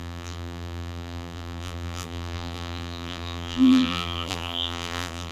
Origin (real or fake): fake